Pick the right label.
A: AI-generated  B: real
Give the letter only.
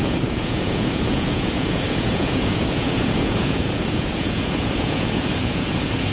A